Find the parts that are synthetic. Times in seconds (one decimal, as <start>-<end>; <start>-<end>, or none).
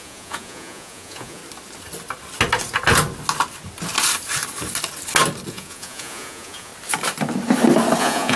0.0-1.4; 5.5-6.7; 8.0-8.4